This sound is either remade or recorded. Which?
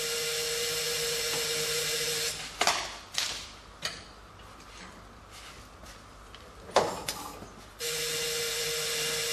recorded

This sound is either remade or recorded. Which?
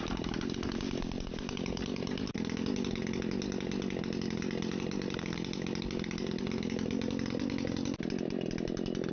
recorded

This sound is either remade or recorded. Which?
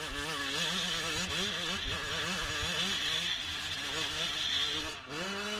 recorded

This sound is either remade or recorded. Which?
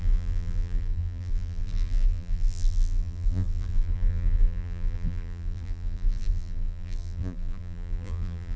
remade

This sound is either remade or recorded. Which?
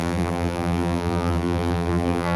remade